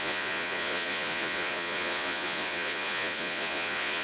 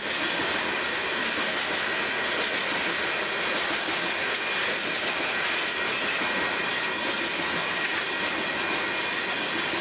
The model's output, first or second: first